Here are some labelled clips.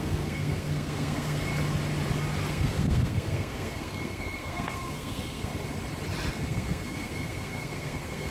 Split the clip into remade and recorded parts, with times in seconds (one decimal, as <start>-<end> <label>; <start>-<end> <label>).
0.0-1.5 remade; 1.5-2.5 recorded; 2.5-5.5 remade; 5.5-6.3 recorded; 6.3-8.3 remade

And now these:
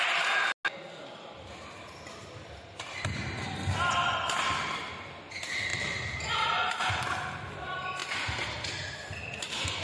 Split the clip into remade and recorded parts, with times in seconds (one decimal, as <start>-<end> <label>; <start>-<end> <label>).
0.0-8.0 recorded; 8.0-8.7 remade; 8.7-9.8 recorded

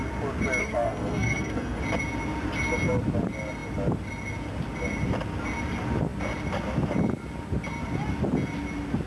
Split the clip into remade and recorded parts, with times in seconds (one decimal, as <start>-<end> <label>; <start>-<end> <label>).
0.0-0.6 recorded; 0.6-1.8 remade; 1.8-9.1 recorded

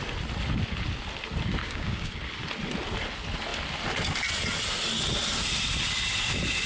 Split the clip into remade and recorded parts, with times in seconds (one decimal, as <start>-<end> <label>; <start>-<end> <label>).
0.0-1.6 recorded; 1.6-2.1 remade; 2.1-6.7 recorded

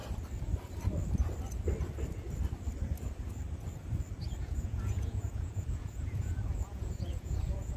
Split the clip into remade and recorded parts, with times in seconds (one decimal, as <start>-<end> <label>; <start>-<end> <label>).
0.0-4.4 recorded; 4.4-7.8 remade

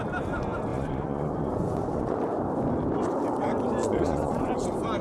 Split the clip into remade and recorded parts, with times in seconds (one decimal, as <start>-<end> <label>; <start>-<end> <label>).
0.0-0.7 recorded; 0.7-2.2 remade; 2.2-3.8 recorded; 3.8-4.5 remade; 4.5-5.0 recorded